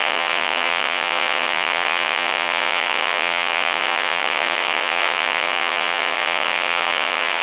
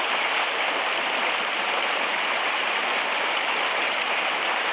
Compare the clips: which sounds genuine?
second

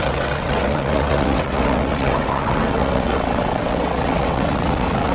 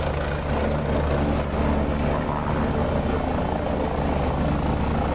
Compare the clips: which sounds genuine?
second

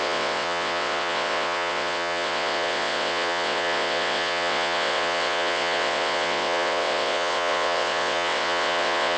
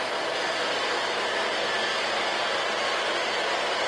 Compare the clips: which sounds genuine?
second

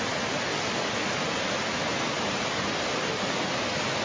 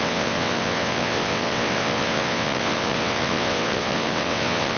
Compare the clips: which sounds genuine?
first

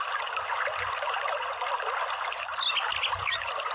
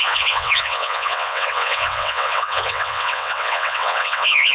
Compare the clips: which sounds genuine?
first